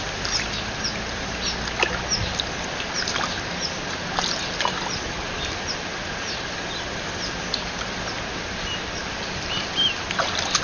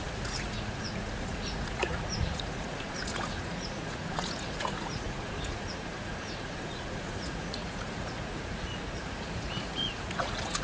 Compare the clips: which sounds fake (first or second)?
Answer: second